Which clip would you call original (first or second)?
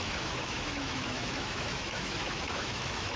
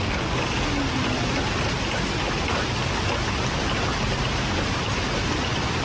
second